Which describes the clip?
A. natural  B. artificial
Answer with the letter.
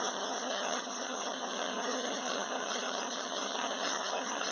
B